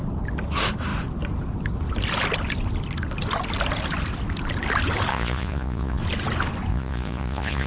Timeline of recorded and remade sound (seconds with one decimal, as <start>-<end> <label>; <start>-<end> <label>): 0.0-5.1 recorded; 5.1-6.0 remade; 6.0-6.7 recorded; 6.7-7.7 remade